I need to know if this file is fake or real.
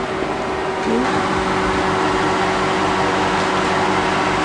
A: real